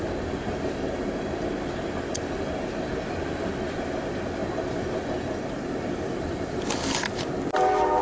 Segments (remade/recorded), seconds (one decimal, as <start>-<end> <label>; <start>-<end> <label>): 0.0-8.0 recorded